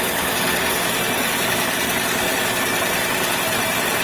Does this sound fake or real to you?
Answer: real